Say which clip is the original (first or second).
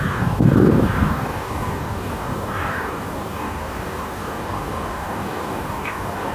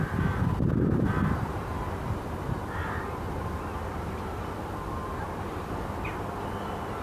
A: second